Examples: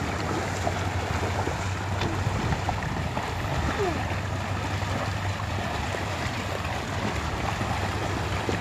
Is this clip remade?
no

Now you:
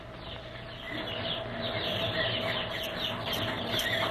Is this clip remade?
no